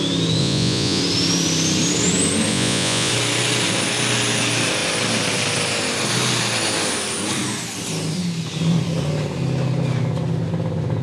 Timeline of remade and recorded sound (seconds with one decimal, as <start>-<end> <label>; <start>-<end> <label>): 0.0-0.4 recorded; 0.4-1.0 remade; 1.0-2.5 recorded; 2.5-3.1 remade; 3.1-11.0 recorded

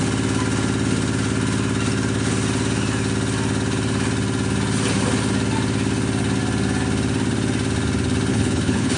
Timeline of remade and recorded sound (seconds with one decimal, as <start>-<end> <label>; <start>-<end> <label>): 0.0-8.3 recorded; 8.3-9.0 remade